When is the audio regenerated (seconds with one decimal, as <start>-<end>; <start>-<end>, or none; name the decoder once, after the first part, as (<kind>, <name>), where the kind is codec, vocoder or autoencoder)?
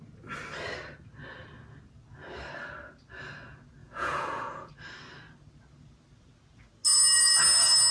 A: 3.8-4.7 (vocoder, Vocos)